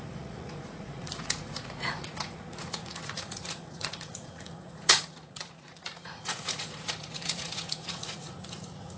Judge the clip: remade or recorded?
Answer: remade